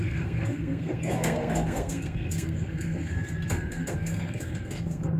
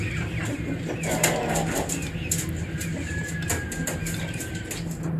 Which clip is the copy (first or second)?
first